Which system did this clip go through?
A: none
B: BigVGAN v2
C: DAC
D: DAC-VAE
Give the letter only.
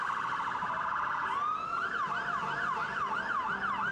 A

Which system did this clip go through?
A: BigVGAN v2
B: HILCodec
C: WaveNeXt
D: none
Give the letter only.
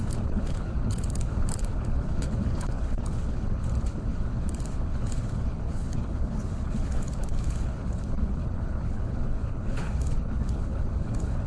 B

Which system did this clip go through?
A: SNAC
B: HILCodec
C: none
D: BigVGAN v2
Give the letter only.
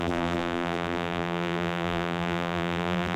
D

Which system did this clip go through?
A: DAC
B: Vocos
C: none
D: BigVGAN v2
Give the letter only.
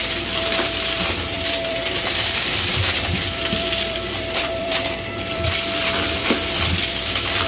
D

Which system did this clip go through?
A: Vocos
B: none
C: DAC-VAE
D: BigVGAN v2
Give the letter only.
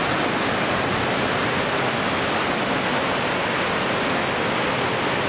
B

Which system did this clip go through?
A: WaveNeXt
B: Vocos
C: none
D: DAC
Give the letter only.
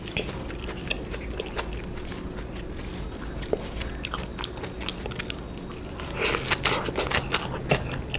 C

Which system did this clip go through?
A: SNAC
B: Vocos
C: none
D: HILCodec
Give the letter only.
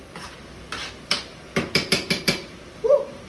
C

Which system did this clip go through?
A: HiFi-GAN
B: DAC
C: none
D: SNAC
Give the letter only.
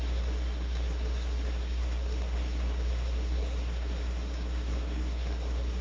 D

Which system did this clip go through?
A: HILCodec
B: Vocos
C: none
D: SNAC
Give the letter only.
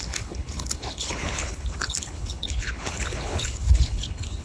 A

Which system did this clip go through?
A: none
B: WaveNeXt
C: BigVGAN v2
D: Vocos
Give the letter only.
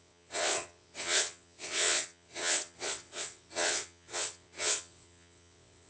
B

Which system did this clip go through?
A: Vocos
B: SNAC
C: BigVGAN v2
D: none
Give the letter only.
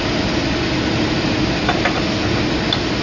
D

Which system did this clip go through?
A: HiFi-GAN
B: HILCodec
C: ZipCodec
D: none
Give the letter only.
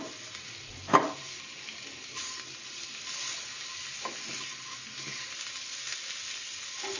D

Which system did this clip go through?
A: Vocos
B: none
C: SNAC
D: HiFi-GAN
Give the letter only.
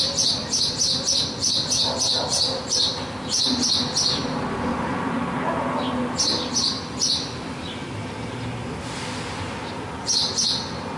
B